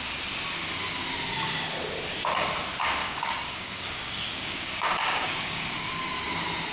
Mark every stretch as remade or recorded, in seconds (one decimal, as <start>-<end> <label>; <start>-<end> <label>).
0.0-3.0 recorded; 3.0-5.9 remade; 5.9-6.7 recorded

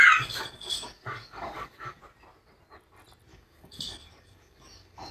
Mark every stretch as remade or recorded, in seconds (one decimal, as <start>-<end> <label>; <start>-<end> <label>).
0.0-2.0 remade; 2.0-3.3 recorded; 3.3-5.1 remade

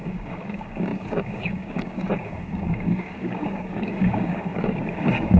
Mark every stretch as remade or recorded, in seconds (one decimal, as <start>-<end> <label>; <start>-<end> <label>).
0.0-5.4 remade

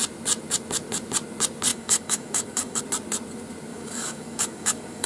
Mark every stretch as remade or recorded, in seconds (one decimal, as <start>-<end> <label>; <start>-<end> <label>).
0.0-1.7 recorded; 1.7-2.8 remade; 2.8-3.7 recorded; 3.7-5.1 remade

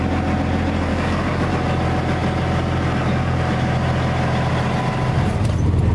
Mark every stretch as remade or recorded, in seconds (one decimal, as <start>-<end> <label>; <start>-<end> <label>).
0.0-0.9 recorded; 0.9-1.5 remade; 1.5-5.9 recorded